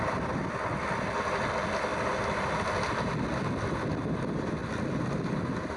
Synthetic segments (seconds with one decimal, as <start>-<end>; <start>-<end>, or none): none